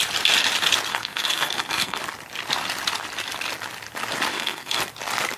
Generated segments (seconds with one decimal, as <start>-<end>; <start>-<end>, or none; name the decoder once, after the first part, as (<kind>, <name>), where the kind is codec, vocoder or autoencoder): 0.9-2.0 (codec, SNAC); 4.3-4.8